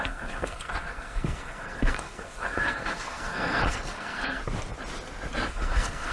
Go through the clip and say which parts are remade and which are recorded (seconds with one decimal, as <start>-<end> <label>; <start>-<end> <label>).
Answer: 0.0-4.4 remade; 4.4-5.5 recorded; 5.5-6.1 remade